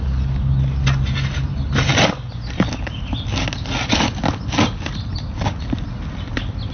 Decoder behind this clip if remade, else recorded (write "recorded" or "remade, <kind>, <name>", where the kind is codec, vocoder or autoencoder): recorded